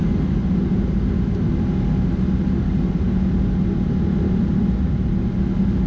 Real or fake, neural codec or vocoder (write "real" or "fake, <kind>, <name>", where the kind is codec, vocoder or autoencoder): real